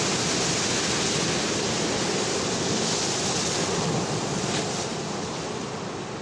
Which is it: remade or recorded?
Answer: recorded